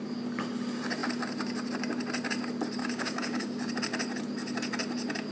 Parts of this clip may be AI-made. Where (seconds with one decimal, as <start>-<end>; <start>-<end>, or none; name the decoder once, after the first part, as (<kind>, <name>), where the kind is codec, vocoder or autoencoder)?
2.8-3.7 (codec, DAC)